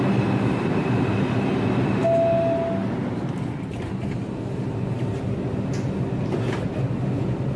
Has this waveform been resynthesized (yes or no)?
no